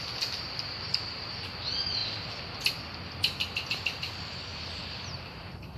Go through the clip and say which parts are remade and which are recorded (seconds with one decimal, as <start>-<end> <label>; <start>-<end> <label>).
0.0-2.0 remade; 2.0-3.7 recorded; 3.7-5.8 remade

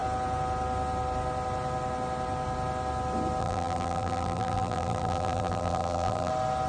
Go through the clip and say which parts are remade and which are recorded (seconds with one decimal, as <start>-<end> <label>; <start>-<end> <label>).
0.0-3.4 recorded; 3.4-6.3 remade; 6.3-6.7 recorded

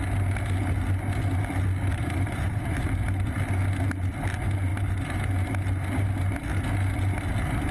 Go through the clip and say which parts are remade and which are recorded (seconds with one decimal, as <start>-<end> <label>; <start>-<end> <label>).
0.0-1.9 recorded; 1.9-2.6 remade; 2.6-4.7 recorded; 4.7-5.2 remade; 5.2-7.7 recorded